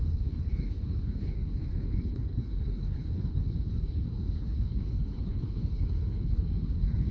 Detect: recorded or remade remade